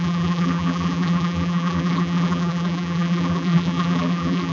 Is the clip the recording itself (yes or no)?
no